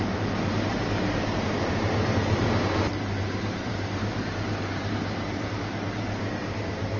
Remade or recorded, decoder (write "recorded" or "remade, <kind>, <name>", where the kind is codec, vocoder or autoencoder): remade, vocoder, BigVGAN v2